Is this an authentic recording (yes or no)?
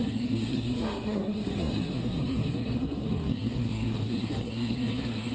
no